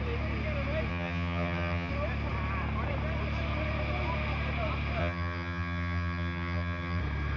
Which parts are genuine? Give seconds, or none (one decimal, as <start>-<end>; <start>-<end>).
0.0-0.9; 1.9-5.0; 7.0-7.4